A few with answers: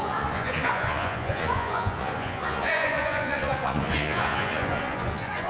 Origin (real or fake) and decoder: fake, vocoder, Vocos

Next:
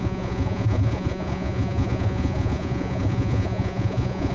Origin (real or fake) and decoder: fake, vocoder, Vocos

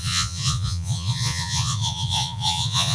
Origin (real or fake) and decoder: fake, vocoder, Vocos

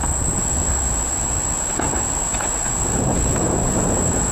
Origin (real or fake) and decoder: fake, vocoder, Vocos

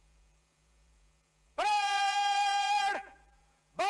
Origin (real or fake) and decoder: fake, vocoder, Vocos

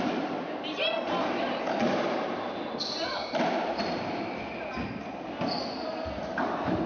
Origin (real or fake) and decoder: real